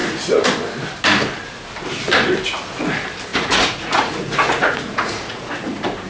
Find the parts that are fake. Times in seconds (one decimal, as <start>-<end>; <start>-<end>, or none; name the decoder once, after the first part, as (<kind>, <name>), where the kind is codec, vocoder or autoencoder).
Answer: 3.3-5.5 (vocoder, Vocos)